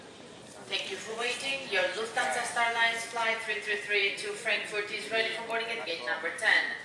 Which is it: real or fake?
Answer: fake